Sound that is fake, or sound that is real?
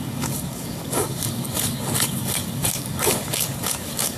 fake